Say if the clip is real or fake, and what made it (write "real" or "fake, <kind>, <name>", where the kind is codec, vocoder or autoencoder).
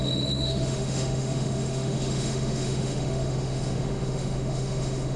fake, autoencoder, DAC-VAE